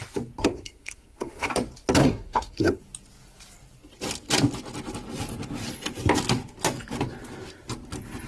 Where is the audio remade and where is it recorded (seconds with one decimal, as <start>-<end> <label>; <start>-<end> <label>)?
0.0-0.4 recorded; 0.4-1.5 remade; 1.5-2.0 recorded; 2.0-2.8 remade; 2.8-8.3 recorded